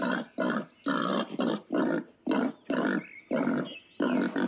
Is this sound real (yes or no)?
yes